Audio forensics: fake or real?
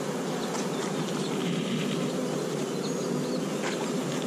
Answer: real